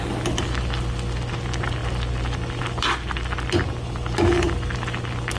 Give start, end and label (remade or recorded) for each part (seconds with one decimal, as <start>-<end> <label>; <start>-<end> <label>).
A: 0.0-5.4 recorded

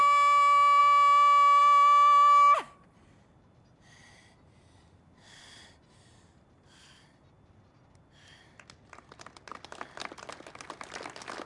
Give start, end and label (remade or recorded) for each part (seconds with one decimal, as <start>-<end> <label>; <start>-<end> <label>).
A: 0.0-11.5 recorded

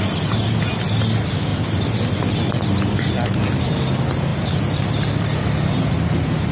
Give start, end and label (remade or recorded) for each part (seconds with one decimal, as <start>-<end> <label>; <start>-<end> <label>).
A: 0.0-6.5 recorded

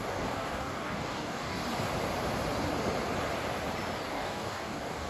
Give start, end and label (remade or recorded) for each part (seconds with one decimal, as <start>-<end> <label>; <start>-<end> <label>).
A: 0.0-1.6 remade; 1.6-4.1 recorded; 4.1-5.1 remade

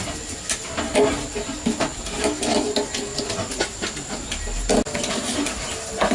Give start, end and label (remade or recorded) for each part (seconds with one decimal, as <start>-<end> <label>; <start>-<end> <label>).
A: 0.0-6.1 recorded